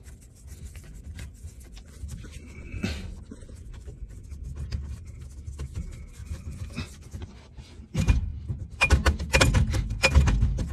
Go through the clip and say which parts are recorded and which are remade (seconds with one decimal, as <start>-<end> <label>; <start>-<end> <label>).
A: 0.0-0.5 recorded; 0.5-4.2 remade; 4.2-6.2 recorded; 6.2-7.4 remade; 7.4-10.7 recorded